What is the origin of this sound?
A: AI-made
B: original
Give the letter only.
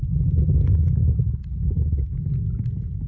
B